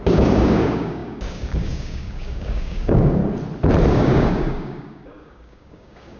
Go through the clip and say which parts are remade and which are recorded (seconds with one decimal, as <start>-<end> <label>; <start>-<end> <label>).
0.0-3.2 remade; 3.2-3.9 recorded; 3.9-6.2 remade